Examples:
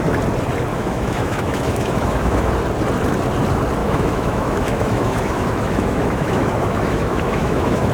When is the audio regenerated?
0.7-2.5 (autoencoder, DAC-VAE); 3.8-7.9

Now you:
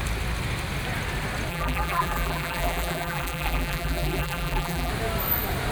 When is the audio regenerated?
1.5-4.9 (vocoder, BigVGAN v2)

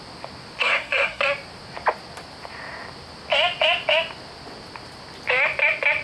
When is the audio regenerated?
0.6-1.2 (codec, SNAC)